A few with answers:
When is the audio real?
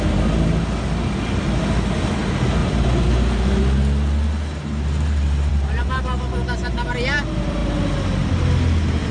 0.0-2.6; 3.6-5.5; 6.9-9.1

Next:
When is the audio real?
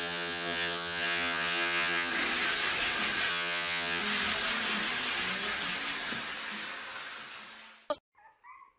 2.1-3.3; 4.0-8.8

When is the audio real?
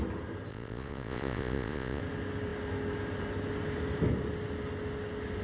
0.0-0.5; 2.0-5.4